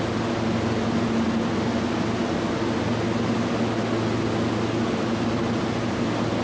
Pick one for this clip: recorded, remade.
recorded